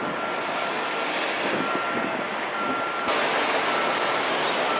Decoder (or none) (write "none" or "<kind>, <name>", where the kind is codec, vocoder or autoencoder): none